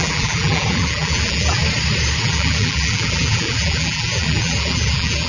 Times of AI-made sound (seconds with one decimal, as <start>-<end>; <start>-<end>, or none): 0.0-1.6; 2.2-5.3